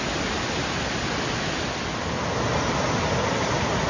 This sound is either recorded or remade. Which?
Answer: recorded